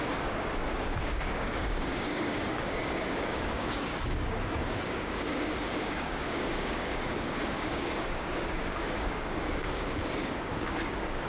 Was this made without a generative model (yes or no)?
no